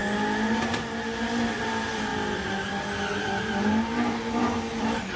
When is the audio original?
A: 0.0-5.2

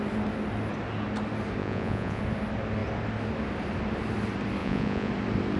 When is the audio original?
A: 0.0-1.6; 2.2-4.6; 5.1-5.6

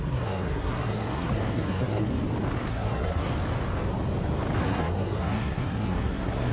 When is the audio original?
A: 2.1-2.7; 3.3-4.6

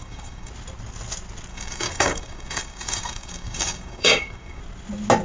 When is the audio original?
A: 0.5-1.5; 4.6-5.2

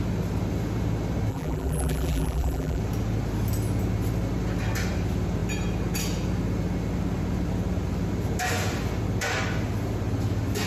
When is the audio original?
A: 0.0-1.3; 2.8-10.7